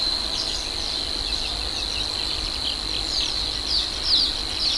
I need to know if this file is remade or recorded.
recorded